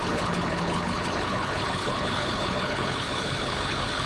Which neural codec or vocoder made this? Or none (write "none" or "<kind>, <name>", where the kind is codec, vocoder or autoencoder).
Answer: codec, HILCodec